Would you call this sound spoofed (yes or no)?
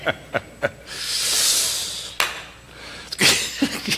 no